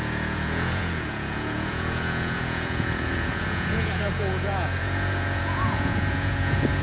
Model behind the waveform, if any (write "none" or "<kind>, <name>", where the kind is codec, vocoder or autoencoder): vocoder, Vocos